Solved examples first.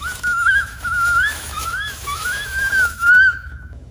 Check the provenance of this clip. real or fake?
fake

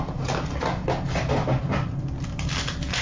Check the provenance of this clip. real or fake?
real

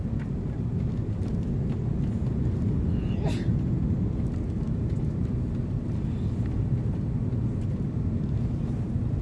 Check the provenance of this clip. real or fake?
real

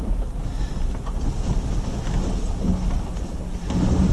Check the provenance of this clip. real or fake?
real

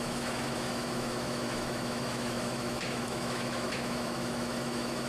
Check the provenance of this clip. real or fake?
fake